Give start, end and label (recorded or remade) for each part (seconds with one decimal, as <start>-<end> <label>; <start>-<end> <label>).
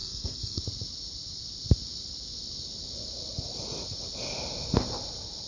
0.0-0.6 remade; 0.6-5.5 recorded